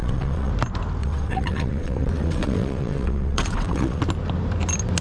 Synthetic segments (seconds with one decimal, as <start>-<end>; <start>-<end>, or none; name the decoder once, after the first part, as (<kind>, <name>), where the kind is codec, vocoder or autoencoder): 0.0-0.5 (vocoder, WaveNeXt); 1.0-4.0